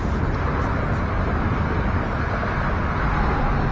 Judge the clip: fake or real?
real